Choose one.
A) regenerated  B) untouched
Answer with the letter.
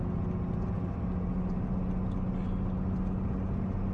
B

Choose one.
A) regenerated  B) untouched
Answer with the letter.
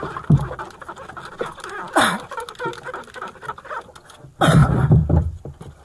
B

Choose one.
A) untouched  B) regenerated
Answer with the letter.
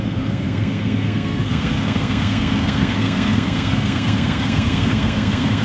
B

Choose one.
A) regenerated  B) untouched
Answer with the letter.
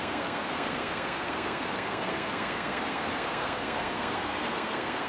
A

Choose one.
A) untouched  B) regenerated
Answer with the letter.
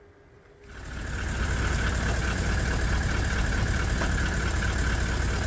A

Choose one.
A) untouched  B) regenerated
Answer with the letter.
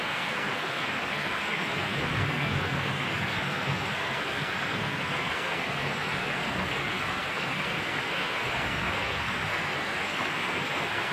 B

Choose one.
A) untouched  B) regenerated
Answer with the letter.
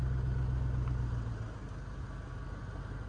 A